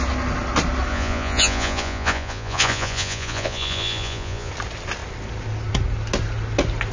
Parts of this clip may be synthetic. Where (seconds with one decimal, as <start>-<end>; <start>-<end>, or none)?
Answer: 0.9-4.5